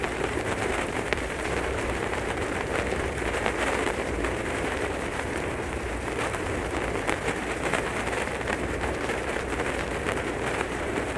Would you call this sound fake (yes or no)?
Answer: yes